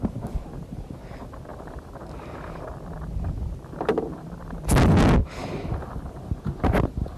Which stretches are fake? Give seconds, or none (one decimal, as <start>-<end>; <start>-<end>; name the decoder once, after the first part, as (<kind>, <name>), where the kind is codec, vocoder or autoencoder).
5.4-6.3 (vocoder, BigVGAN v2)